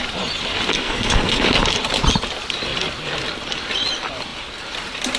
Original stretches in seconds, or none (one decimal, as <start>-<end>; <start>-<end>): 0.0-0.7; 1.6-5.2